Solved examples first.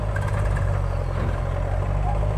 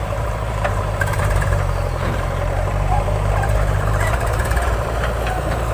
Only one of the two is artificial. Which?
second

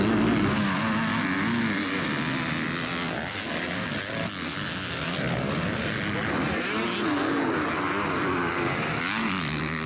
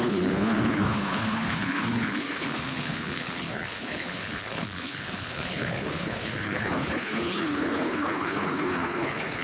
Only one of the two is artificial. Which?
second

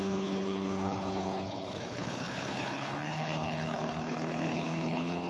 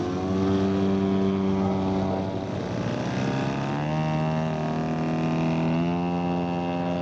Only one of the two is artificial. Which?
first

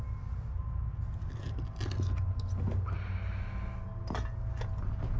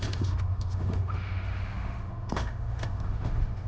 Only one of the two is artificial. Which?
second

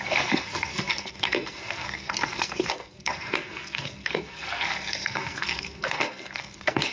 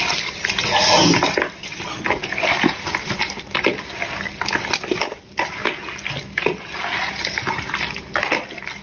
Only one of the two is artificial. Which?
first